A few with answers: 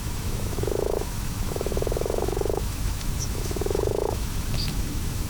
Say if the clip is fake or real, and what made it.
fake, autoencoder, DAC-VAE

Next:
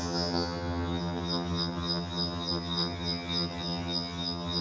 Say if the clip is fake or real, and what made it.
fake, vocoder, HiFi-GAN